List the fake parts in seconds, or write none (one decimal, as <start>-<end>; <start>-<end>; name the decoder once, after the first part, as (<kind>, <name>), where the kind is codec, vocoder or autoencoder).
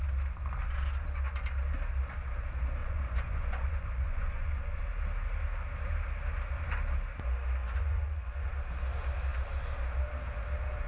2.8-4.8 (vocoder, Vocos); 7.6-8.5